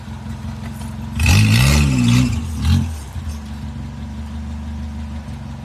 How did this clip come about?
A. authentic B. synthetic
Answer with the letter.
A